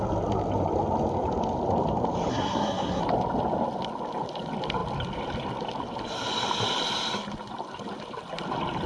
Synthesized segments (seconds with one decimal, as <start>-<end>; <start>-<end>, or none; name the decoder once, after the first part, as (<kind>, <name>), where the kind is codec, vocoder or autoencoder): 2.3-3.0 (codec, SNAC)